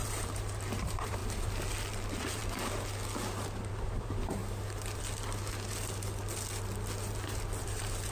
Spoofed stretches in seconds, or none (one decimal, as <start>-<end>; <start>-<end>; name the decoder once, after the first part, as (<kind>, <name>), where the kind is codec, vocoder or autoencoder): 0.0-1.2 (vocoder, BigVGAN v2); 1.9-2.4; 3.6-4.4; 7.6-8.1